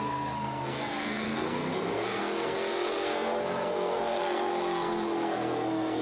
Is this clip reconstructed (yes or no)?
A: yes